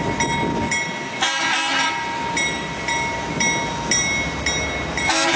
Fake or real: real